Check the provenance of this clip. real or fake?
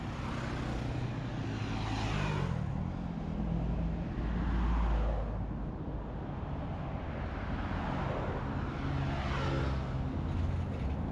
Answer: real